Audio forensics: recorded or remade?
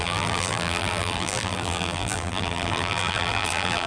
remade